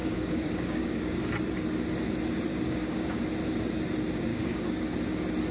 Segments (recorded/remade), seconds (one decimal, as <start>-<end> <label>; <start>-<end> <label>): 0.0-1.2 remade; 1.2-2.5 recorded; 2.5-3.2 remade; 3.2-4.3 recorded; 4.3-4.9 remade; 4.9-5.5 recorded